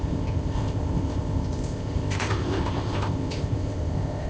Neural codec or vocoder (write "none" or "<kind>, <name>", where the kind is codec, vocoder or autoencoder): codec, ZipCodec